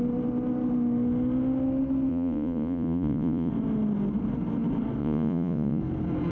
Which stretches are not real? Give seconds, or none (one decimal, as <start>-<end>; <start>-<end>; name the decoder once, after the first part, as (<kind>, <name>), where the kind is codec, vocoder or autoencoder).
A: 2.1-3.5 (vocoder, Vocos); 5.0-5.8